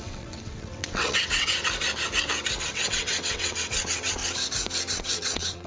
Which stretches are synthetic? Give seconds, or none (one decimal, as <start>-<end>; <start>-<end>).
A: 0.0-1.6; 2.7-4.2; 4.9-5.7